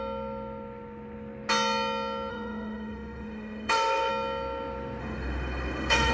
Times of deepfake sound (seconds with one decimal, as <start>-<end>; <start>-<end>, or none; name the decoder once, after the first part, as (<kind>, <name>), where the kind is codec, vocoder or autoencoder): 2.3-4.1 (autoencoder, DAC-VAE); 5.0-6.1